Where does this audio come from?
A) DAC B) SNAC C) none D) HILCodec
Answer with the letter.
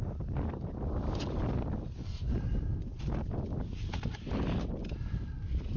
C